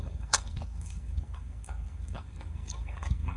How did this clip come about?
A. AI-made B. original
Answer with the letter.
A